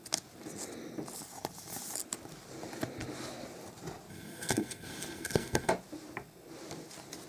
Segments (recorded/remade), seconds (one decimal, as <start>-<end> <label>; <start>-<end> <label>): 0.0-4.1 recorded; 4.1-5.7 remade; 5.7-7.3 recorded